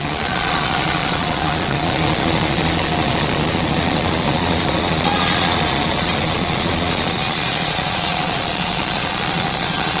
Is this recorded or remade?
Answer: remade